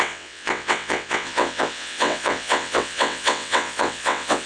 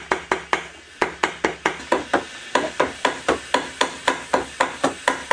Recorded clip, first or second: second